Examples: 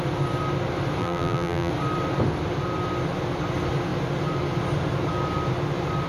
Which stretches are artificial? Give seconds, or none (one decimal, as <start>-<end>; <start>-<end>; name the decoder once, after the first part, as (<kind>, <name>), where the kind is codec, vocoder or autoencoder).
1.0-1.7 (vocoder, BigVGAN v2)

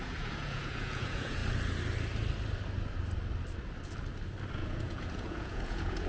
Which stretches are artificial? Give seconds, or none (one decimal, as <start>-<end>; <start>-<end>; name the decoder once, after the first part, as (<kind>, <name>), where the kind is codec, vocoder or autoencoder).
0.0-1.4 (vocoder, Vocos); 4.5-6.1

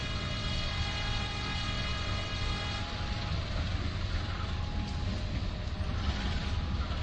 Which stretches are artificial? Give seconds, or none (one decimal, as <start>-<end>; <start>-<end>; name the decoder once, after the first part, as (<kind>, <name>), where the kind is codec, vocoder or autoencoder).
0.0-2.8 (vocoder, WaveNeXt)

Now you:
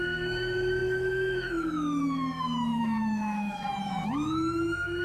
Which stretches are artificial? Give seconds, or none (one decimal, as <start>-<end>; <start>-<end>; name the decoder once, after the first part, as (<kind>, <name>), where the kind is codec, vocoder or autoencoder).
0.0-5.0 (autoencoder, DAC-VAE)

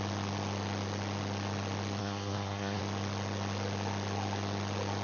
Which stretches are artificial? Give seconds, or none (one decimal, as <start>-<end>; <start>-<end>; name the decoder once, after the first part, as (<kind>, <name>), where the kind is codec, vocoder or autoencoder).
2.0-2.8 (codec, SNAC)